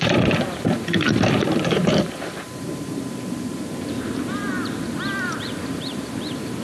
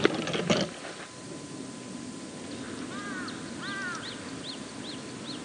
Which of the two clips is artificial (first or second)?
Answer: first